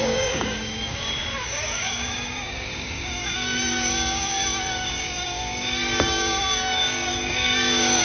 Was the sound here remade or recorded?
remade